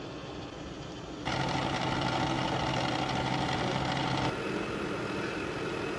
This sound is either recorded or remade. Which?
recorded